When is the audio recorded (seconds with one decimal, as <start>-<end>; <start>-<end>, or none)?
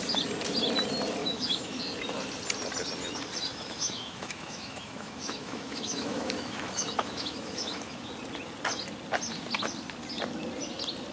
0.0-1.2; 1.8-3.5; 8.1-11.1